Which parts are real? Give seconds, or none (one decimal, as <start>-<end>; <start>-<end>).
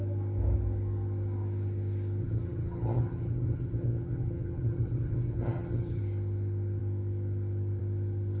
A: 0.0-2.2; 6.0-8.4